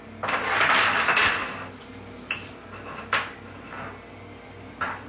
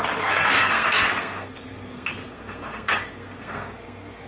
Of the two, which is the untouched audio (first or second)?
first